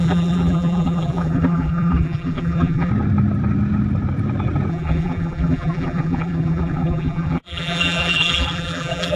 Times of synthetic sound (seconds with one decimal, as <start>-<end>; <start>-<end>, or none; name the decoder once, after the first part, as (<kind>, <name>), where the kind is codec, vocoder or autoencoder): 0.0-2.9 (vocoder, BigVGAN v2); 4.7-9.2